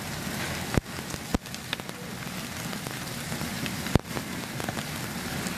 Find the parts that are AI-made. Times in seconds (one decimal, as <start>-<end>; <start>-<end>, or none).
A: none